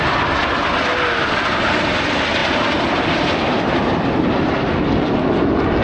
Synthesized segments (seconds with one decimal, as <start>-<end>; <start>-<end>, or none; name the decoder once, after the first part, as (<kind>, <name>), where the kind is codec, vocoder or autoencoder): 2.4-4.9 (vocoder, BigVGAN v2)